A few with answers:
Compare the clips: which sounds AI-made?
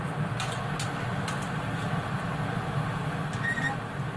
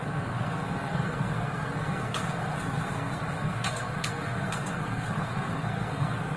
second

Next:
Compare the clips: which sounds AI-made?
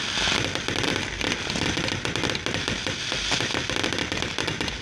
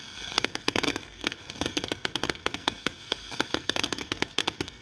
second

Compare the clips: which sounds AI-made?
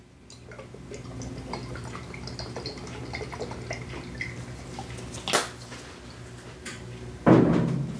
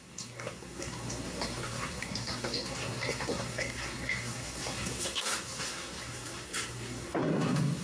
second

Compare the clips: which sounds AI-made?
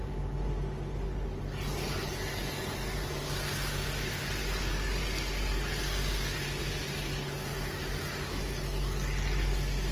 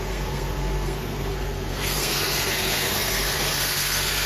second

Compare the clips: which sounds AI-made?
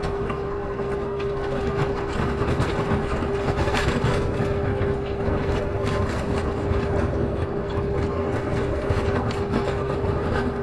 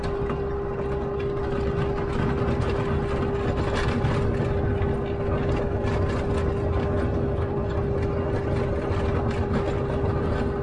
first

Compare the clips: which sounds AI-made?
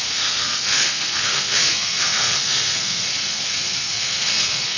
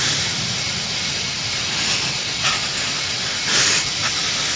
first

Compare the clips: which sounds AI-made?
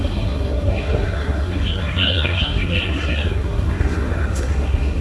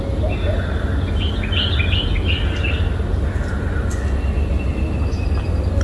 first